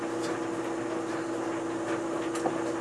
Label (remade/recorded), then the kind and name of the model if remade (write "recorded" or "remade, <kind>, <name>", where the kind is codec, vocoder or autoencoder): recorded